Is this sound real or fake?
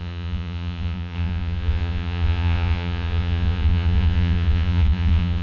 fake